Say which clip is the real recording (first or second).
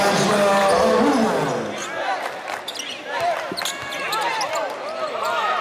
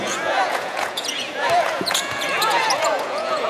first